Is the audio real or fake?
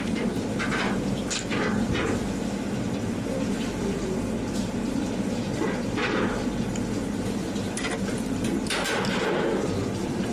fake